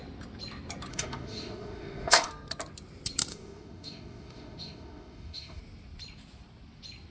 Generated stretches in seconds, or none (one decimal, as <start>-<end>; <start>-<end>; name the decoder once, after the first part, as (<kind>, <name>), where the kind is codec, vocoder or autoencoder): 0.9-2.3 (autoencoder, DAC-VAE); 3.3-5.6